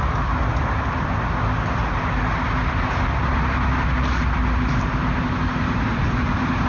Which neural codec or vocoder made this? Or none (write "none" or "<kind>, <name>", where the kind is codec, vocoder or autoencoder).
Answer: none